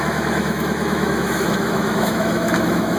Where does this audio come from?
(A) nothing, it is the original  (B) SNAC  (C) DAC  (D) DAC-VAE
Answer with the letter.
D